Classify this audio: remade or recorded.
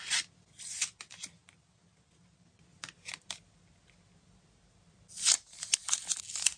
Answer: recorded